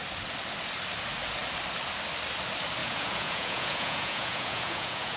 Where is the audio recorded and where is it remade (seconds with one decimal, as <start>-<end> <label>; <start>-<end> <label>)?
0.0-2.8 recorded; 2.8-5.2 remade

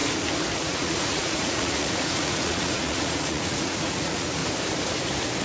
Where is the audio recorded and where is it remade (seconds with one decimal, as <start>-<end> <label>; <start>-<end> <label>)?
0.0-0.6 recorded; 0.6-4.4 remade; 4.4-5.4 recorded

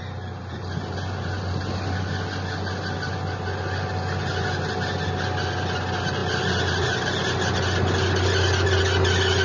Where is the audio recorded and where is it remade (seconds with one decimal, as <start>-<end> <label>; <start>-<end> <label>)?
0.0-9.4 recorded

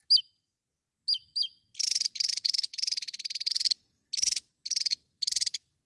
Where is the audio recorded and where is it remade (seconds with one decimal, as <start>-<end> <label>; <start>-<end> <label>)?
0.0-5.9 recorded